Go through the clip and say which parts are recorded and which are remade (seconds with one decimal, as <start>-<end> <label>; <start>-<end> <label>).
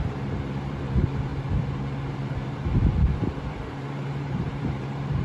0.0-1.3 remade; 1.3-2.1 recorded; 2.1-2.6 remade; 2.6-3.5 recorded; 3.5-5.2 remade